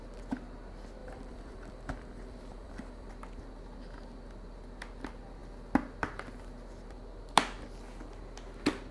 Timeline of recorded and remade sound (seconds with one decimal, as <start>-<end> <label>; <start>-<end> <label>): 0.0-1.0 recorded; 1.0-3.1 remade; 3.1-8.9 recorded